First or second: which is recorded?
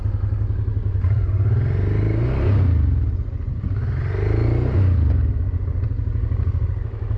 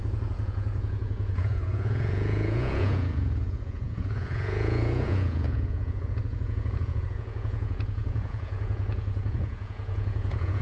first